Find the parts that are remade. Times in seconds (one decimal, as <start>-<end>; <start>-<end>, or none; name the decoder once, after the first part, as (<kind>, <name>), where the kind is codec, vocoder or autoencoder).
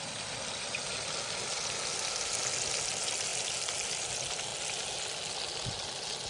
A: none